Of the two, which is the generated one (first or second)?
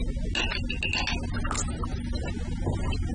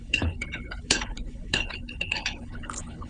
second